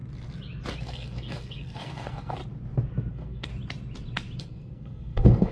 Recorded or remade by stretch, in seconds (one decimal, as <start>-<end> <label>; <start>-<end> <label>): 0.0-0.8 recorded; 0.8-2.4 remade; 2.4-3.1 recorded; 3.1-3.5 remade; 3.5-4.4 recorded; 4.4-5.5 remade